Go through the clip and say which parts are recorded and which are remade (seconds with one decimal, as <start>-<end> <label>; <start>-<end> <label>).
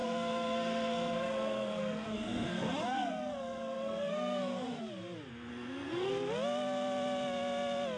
0.0-4.8 remade; 4.8-5.5 recorded; 5.5-6.1 remade; 6.1-8.0 recorded